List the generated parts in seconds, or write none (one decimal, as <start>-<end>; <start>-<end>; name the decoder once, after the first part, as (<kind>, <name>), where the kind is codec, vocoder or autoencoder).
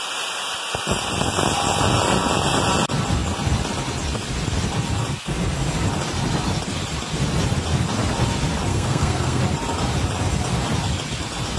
8.7-9.4 (codec, SNAC)